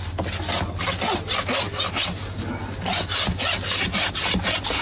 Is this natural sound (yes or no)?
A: yes